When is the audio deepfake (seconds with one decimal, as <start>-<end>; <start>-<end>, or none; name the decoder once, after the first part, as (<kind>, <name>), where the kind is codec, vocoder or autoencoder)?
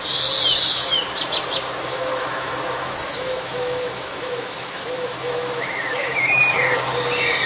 1.9-6.4 (autoencoder, DAC-VAE)